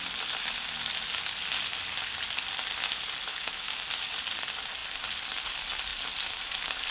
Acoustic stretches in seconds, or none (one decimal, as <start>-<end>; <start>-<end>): 0.0-3.3; 3.8-6.9